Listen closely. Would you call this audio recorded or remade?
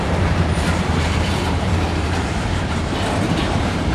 remade